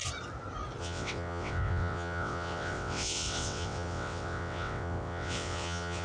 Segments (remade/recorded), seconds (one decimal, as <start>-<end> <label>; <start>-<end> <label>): 0.0-0.8 recorded; 0.8-6.0 remade